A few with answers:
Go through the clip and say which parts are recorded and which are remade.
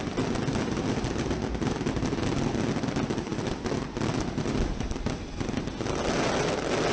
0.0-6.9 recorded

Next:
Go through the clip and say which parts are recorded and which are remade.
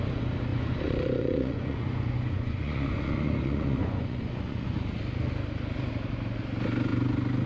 0.0-0.5 recorded; 0.5-4.9 remade; 4.9-7.5 recorded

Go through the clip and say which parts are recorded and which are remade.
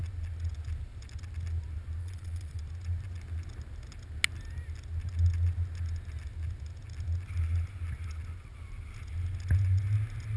0.0-2.0 recorded; 2.0-2.6 remade; 2.6-10.4 recorded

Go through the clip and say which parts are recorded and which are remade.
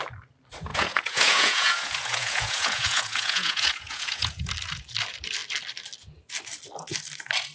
0.0-0.7 recorded; 0.7-4.4 remade; 4.4-7.5 recorded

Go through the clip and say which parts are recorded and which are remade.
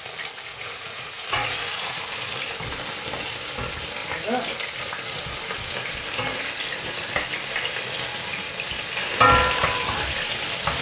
0.0-0.5 recorded; 0.5-2.0 remade; 2.0-10.8 recorded